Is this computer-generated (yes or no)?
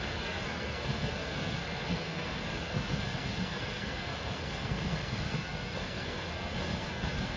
yes